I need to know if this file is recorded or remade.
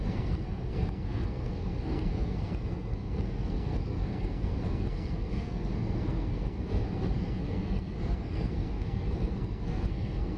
remade